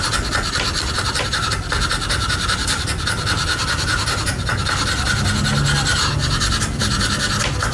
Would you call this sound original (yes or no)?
yes